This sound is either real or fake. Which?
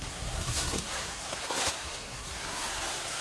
fake